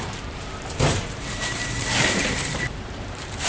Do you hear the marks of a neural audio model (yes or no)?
yes